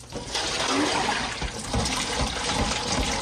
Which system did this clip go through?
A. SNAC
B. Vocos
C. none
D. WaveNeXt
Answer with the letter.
C